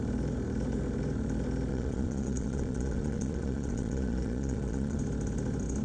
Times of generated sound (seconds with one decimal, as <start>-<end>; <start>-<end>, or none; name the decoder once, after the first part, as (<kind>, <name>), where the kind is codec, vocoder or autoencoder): 1.7-5.0 (vocoder, Vocos)